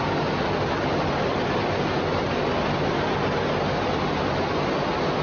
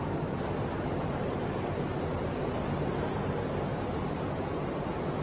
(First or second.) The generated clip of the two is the second